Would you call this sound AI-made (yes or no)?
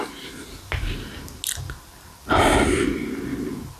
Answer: no